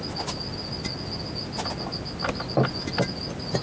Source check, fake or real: real